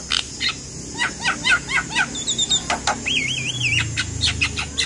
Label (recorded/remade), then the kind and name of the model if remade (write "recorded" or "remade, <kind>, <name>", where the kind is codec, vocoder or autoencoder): recorded